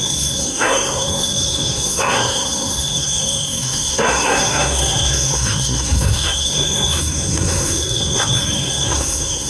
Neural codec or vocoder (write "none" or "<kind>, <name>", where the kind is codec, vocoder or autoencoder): codec, SNAC